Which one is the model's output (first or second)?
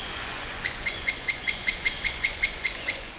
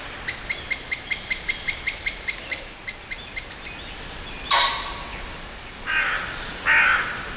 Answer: first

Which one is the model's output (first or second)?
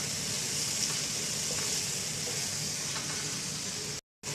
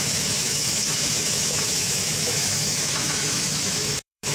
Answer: second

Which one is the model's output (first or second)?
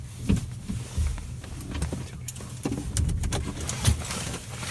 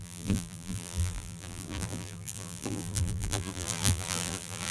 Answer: second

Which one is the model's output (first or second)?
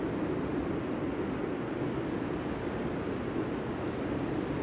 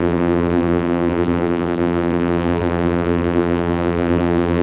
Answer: second